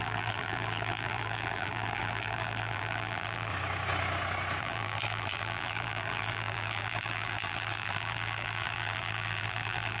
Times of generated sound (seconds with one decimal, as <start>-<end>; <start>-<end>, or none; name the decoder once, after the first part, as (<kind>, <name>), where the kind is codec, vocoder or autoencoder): 0.0-3.5 (vocoder, BigVGAN v2); 4.6-10.0